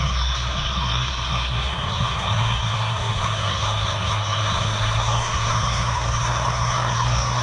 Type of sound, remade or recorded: remade